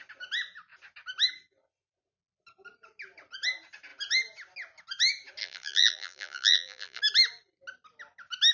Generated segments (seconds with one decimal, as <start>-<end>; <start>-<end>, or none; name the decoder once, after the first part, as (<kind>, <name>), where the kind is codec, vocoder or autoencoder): 5.4-7.0 (vocoder, BigVGAN v2)